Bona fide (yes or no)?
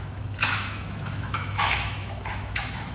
no